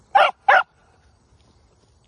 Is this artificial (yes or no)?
no